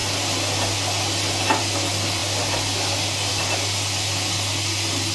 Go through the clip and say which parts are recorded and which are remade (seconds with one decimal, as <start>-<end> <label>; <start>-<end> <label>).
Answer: 0.0-5.1 recorded